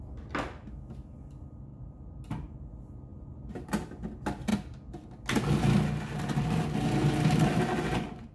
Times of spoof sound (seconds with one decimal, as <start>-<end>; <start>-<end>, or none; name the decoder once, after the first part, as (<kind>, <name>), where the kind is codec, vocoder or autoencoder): 1.7-2.7 (vocoder, BigVGAN v2); 3.1-3.7